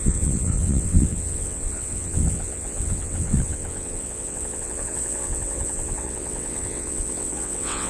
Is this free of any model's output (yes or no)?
no